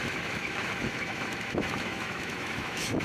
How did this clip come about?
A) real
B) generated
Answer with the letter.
B